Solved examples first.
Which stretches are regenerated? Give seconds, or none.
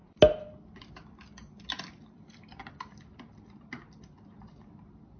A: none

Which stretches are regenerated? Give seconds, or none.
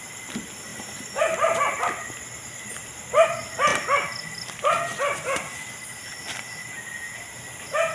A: none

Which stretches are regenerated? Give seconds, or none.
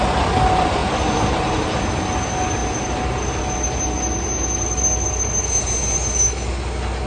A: 0.8-1.7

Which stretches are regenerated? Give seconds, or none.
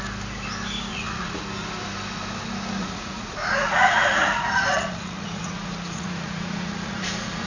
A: 0.9-1.4; 2.8-7.5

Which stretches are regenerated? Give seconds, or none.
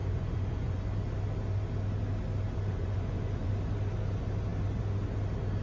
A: 0.0-0.8; 2.7-3.5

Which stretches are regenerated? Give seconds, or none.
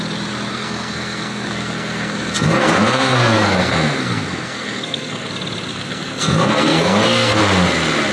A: 0.5-5.3; 5.7-7.4